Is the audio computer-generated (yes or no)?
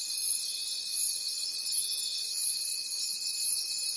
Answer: no